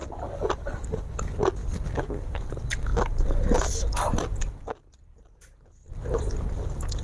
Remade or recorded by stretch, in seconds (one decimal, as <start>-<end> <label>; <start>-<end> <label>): 0.0-7.0 recorded